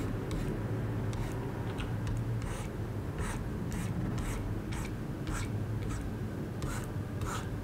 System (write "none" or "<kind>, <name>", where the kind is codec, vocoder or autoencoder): none